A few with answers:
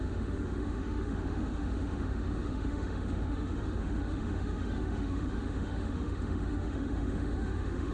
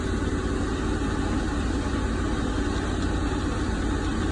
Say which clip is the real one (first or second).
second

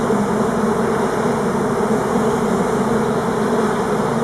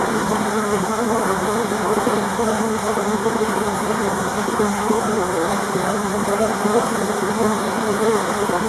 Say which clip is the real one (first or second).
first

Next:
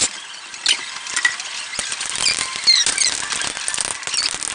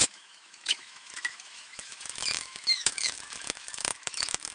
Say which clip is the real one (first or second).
first